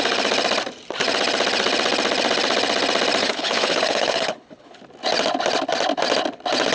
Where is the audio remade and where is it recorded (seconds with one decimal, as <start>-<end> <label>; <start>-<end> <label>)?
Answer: 0.0-3.2 recorded; 3.2-4.8 remade; 4.8-6.7 recorded